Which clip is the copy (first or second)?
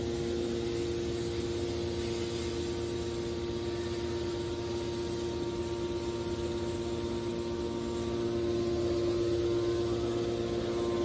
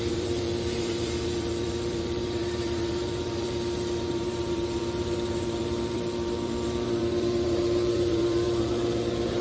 second